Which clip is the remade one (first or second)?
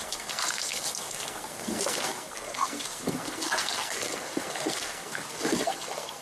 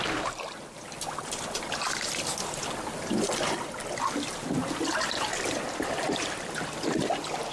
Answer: first